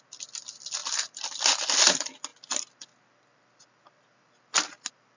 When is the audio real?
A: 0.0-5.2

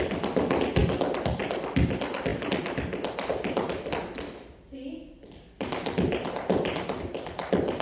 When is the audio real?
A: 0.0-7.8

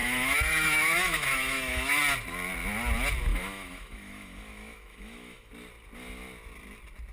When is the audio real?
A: 2.0-3.3; 5.5-7.1